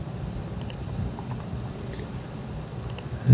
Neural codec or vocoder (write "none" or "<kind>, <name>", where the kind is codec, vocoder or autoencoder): vocoder, BigVGAN v2